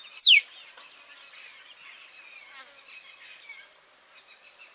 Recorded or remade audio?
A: recorded